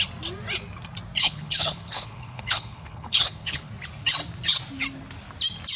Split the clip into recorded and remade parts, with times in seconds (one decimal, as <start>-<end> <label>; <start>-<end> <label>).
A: 0.0-1.2 recorded; 1.2-3.7 remade; 3.7-5.8 recorded